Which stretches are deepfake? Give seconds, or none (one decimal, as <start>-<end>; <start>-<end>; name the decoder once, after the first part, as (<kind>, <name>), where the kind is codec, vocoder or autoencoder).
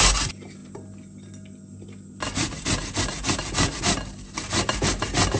none